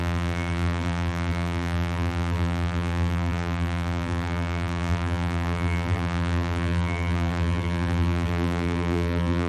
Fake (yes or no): yes